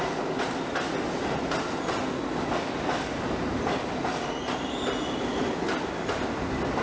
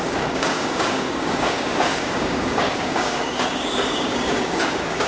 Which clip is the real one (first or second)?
first